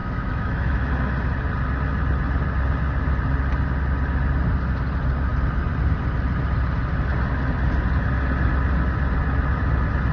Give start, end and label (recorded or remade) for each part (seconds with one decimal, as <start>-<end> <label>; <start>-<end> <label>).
0.0-0.9 remade; 0.9-10.1 recorded